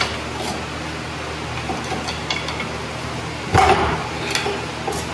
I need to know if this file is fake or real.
real